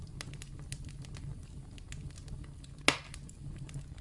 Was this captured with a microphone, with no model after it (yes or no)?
yes